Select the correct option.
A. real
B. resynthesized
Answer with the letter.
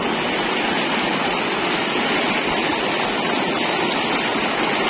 A